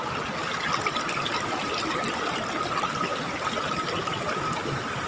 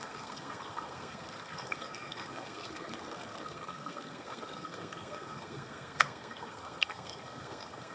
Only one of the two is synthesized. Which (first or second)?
second